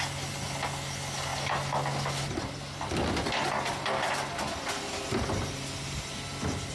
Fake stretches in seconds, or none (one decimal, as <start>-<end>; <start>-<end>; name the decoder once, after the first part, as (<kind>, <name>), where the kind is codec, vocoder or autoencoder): none